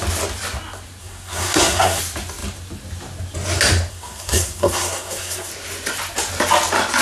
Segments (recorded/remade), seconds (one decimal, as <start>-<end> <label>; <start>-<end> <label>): 0.0-1.0 recorded; 1.0-2.0 remade; 2.0-3.9 recorded; 3.9-5.5 remade; 5.5-7.0 recorded